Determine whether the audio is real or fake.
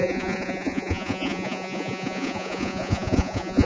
fake